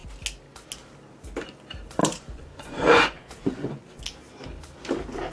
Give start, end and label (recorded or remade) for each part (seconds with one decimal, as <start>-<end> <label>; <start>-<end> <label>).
0.0-2.0 recorded; 2.0-4.0 remade; 4.0-5.3 recorded